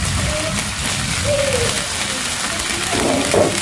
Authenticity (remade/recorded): recorded